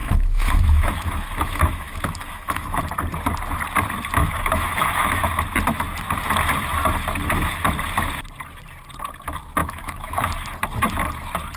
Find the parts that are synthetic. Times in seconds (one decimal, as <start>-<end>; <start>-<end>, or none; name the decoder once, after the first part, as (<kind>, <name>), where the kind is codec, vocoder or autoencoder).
0.0-2.8 (autoencoder, DAC-VAE); 4.2-5.3; 9.6-10.3